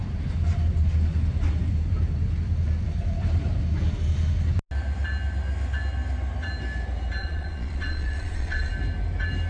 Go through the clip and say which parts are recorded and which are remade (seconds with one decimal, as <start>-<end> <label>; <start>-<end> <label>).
0.0-7.2 recorded; 7.2-8.7 remade; 8.7-9.5 recorded